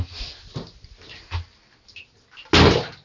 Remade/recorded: recorded